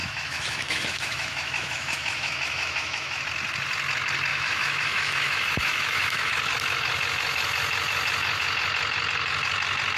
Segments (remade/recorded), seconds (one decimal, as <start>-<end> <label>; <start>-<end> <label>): 0.0-3.2 remade; 3.2-4.3 recorded; 4.3-6.3 remade; 6.3-10.0 recorded